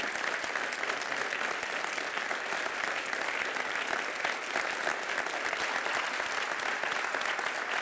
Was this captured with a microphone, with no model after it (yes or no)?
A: yes